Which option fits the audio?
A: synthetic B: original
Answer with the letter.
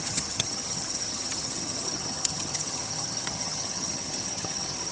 A